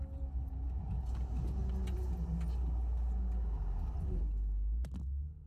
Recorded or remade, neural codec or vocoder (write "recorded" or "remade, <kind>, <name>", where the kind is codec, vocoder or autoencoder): recorded